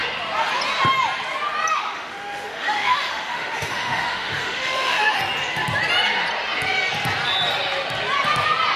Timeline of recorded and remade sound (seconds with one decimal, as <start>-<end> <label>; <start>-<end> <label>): 0.0-1.7 recorded; 1.7-5.2 remade; 5.2-8.8 recorded